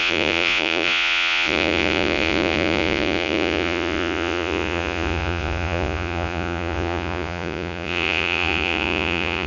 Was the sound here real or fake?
fake